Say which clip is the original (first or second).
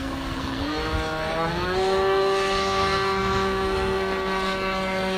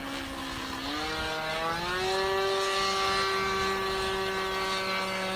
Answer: second